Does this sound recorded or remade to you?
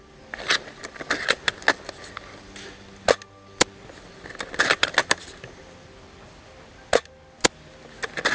recorded